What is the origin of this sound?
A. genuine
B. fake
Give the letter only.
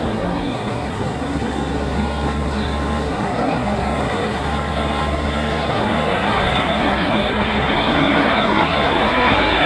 B